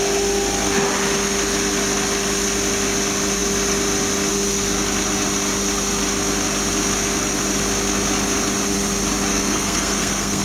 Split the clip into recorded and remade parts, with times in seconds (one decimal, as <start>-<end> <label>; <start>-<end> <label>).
0.0-9.3 recorded; 9.3-10.4 remade